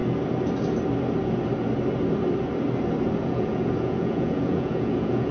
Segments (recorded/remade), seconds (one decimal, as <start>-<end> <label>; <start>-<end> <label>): 0.0-3.2 recorded; 3.2-5.3 remade